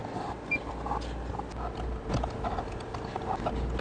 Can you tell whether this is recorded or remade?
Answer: recorded